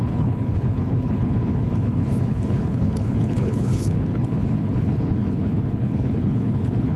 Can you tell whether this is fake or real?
fake